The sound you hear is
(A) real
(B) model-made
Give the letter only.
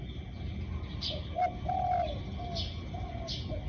A